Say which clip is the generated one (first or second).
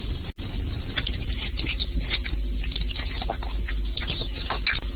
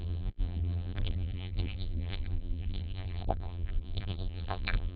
second